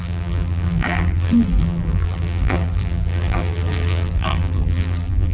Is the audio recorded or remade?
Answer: remade